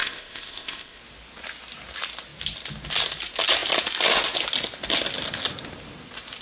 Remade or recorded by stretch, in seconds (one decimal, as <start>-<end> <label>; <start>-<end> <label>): 0.0-1.0 remade; 1.0-6.4 recorded